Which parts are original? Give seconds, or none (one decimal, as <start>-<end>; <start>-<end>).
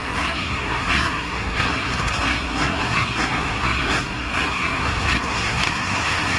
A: none